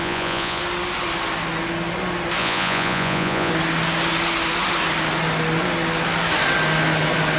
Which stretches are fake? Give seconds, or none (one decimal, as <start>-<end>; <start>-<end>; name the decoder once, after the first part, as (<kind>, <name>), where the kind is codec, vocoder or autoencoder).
0.0-0.6 (vocoder, Vocos); 2.4-3.5